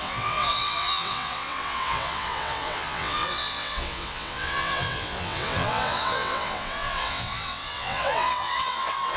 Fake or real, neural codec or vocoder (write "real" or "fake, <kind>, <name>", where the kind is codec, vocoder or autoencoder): fake, vocoder, WaveNeXt